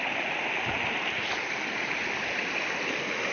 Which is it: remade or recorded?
recorded